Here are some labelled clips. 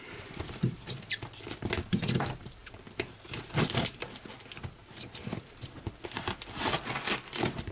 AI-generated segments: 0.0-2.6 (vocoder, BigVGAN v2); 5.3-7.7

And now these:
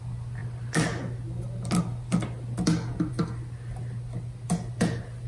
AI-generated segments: none